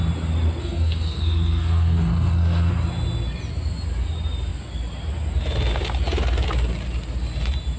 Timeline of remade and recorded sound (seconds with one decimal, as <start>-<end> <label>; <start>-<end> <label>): 0.0-0.6 recorded; 0.6-2.7 remade; 2.7-7.8 recorded